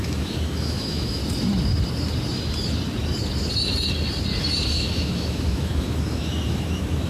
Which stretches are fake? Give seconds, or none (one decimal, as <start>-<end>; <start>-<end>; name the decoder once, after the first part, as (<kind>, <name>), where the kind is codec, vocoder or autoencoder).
0.0-1.2 (autoencoder, DAC-VAE); 4.7-7.1